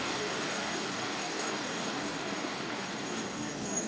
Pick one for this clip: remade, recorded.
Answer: remade